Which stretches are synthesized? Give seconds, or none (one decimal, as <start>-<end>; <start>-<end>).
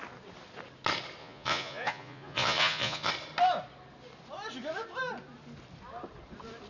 1.2-3.1